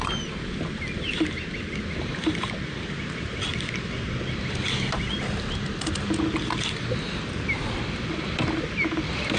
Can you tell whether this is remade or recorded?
recorded